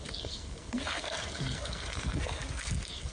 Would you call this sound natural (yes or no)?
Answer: no